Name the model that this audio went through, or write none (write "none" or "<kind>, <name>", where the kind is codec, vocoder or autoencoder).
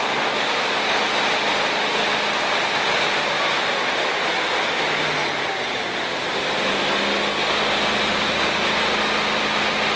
none